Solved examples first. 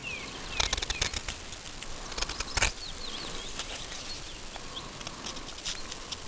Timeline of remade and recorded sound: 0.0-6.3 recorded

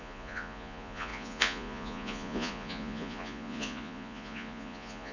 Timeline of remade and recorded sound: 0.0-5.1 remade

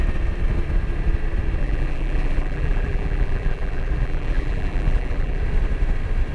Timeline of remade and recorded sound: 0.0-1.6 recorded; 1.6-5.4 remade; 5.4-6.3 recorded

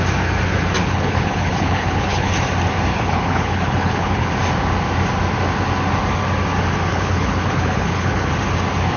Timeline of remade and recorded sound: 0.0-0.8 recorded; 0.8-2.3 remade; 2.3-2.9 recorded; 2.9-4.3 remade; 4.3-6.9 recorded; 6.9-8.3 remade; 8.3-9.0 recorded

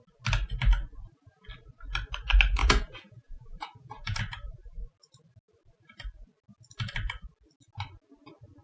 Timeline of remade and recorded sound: 0.0-2.6 recorded; 2.6-4.2 remade; 4.2-8.6 recorded

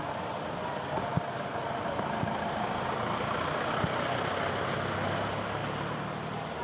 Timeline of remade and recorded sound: 0.0-6.6 recorded

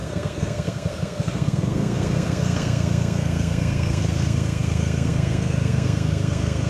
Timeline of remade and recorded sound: 0.0-6.7 remade

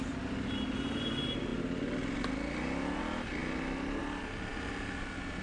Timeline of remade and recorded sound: 0.0-5.4 recorded